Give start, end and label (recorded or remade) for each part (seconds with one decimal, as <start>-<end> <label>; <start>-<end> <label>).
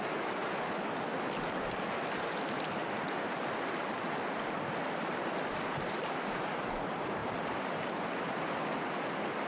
0.0-9.5 recorded